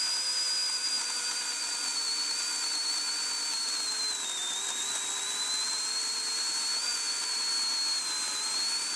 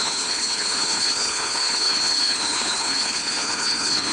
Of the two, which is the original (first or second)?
first